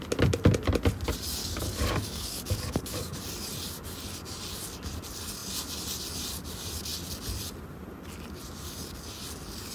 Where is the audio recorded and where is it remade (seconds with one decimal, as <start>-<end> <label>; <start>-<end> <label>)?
0.0-1.4 recorded; 1.4-3.2 remade; 3.2-9.7 recorded